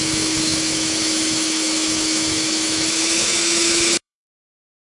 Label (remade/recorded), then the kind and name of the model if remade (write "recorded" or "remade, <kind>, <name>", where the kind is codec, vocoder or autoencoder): remade, autoencoder, DAC-VAE